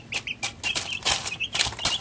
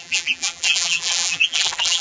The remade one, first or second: second